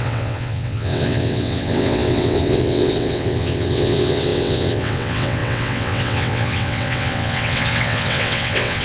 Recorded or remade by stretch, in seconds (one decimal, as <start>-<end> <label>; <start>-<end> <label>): 0.0-8.8 remade